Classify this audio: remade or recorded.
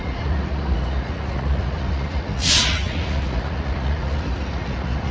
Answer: remade